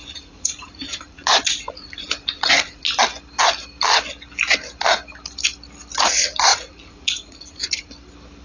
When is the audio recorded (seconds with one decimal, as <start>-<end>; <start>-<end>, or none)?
2.8-6.5; 7.9-8.4